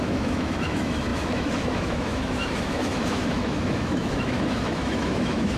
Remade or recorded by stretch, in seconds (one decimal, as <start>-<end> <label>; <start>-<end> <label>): 0.0-5.6 remade